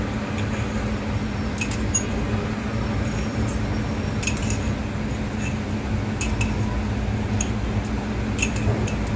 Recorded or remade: recorded